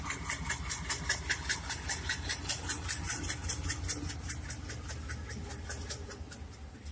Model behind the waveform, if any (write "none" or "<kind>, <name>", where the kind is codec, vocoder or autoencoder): none